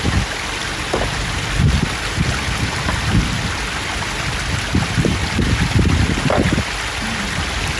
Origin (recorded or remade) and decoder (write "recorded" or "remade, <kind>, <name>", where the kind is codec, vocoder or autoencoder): recorded